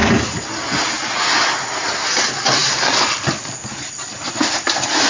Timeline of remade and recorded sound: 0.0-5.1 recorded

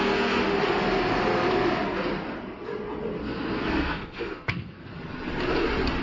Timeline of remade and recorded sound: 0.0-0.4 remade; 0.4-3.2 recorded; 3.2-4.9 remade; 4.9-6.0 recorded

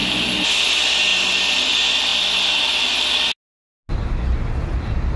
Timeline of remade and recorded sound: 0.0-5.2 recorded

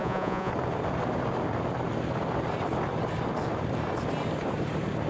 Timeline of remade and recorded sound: 0.0-0.5 remade; 0.5-5.1 recorded

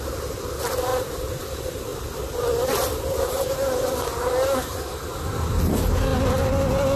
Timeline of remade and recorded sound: 0.0-7.0 recorded

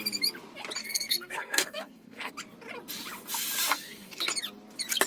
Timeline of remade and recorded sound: 0.0-0.8 recorded; 0.8-2.3 remade; 2.3-3.7 recorded; 3.7-4.3 remade; 4.3-5.1 recorded

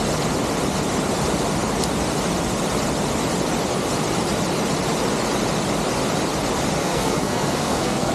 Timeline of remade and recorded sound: 0.0-6.8 recorded; 6.8-8.1 remade

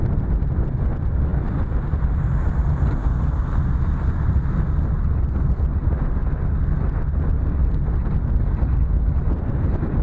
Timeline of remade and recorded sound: 0.0-10.0 recorded